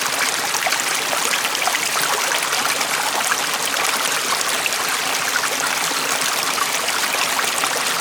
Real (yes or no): yes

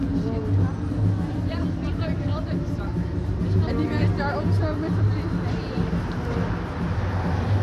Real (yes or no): yes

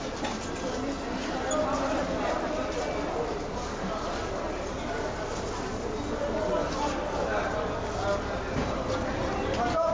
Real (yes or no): yes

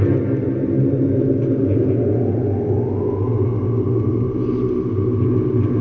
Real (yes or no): yes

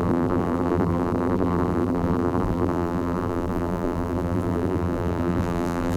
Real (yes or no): no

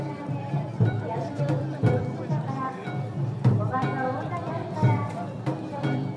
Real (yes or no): no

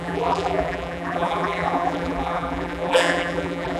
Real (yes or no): no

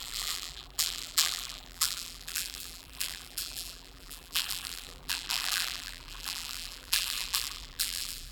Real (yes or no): no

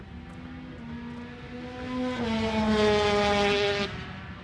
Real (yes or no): yes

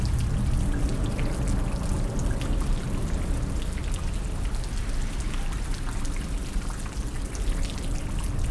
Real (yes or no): yes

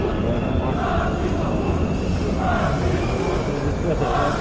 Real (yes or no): yes